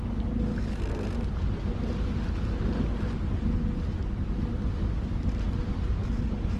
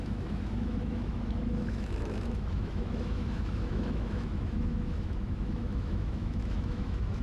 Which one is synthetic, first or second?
second